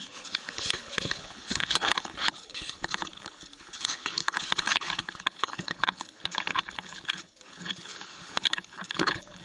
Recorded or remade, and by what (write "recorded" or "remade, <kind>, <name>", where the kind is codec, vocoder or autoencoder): remade, codec, HILCodec